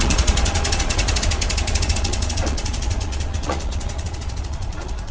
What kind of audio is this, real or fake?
fake